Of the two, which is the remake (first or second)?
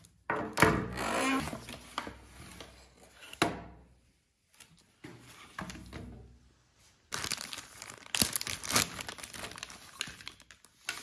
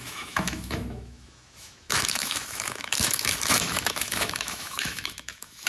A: second